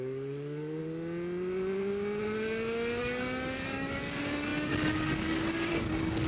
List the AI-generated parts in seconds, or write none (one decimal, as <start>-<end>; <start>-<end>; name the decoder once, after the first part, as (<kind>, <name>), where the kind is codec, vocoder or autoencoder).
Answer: 0.0-0.8 (codec, DAC); 3.0-6.3

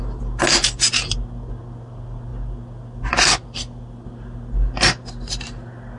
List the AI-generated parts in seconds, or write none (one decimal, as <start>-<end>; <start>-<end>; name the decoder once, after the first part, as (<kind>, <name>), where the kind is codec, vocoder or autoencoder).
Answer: none

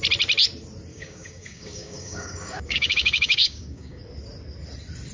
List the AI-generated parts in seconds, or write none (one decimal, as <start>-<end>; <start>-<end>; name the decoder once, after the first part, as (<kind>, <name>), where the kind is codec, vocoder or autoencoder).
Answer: 0.9-4.0 (codec, DAC)

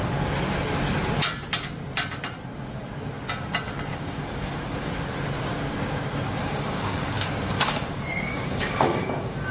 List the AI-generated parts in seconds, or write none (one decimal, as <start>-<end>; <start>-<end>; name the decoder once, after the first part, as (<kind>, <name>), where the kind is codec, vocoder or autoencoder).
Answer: 3.9-4.9 (codec, DAC); 6.4-9.5

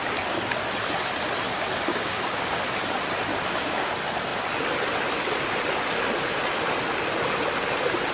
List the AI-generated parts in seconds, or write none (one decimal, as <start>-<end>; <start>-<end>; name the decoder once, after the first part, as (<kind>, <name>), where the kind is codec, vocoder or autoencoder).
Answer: 1.9-2.6 (codec, DAC); 3.3-3.9

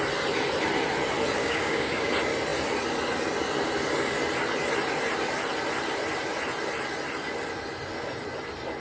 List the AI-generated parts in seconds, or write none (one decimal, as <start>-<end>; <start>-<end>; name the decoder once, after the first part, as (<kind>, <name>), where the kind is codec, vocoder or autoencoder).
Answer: 1.4-2.1 (codec, DAC)

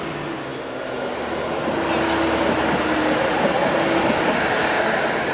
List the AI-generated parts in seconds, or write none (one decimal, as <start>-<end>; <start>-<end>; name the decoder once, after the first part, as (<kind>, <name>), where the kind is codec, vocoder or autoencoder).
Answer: 4.6-5.3 (codec, DAC)

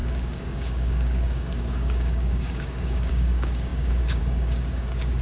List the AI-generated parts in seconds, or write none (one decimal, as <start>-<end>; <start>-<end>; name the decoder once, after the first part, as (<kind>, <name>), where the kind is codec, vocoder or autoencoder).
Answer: 0.0-5.2 (codec, DAC)